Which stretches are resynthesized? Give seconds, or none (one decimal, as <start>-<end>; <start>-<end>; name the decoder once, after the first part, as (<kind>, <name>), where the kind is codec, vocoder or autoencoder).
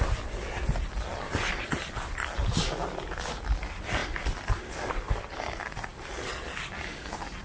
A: none